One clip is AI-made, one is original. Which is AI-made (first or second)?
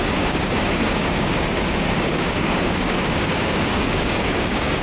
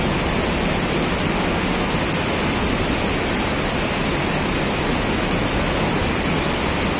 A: first